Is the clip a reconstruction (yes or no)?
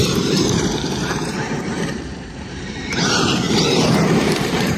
yes